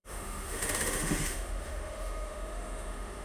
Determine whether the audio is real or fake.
fake